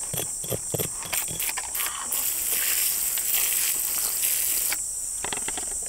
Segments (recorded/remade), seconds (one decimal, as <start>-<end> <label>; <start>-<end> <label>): 0.0-5.9 recorded